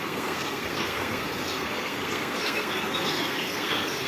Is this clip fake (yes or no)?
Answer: yes